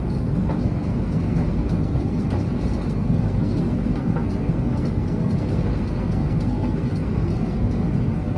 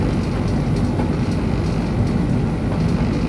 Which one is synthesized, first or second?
first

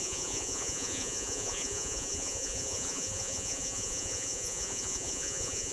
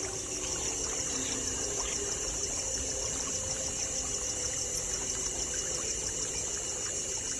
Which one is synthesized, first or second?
first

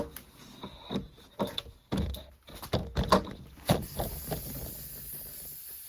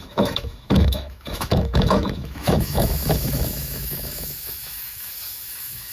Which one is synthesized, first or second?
second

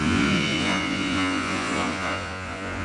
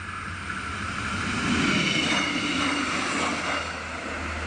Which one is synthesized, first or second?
first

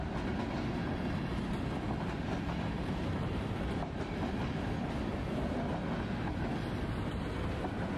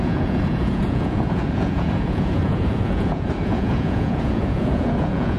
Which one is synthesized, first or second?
second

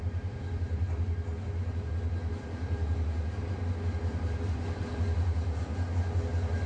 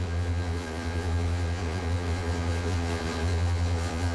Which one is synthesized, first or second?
second